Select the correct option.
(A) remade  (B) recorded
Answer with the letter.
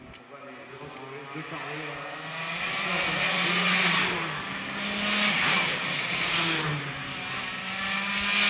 B